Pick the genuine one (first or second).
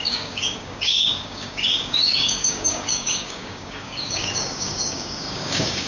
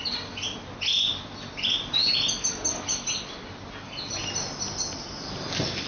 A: second